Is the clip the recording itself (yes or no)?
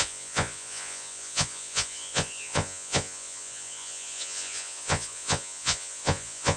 no